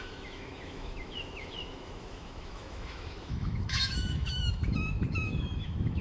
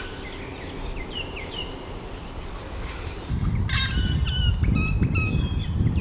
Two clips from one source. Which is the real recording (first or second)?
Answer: second